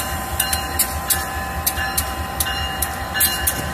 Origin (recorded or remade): remade